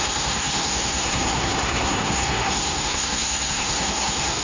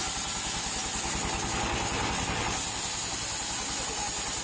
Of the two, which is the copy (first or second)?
first